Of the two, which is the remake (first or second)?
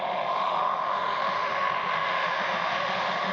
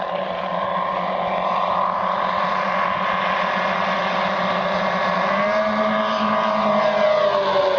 first